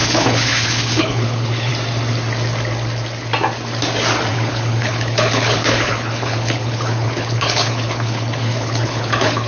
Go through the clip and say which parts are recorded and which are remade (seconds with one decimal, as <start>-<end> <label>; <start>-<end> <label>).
0.0-1.7 remade; 1.7-4.3 recorded; 4.3-9.5 remade